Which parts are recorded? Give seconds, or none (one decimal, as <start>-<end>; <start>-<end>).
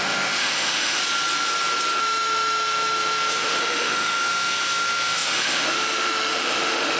1.0-2.0